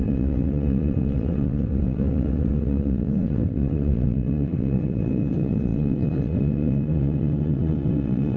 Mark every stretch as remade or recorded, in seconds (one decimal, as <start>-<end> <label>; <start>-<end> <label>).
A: 0.0-8.4 remade

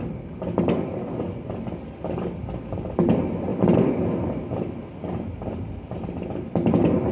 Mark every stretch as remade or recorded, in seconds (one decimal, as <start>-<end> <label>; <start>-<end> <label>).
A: 0.0-7.1 recorded